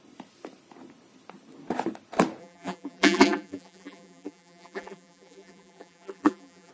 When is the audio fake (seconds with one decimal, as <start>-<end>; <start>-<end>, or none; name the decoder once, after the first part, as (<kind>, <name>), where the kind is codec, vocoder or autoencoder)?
2.4-6.7 (vocoder, BigVGAN v2)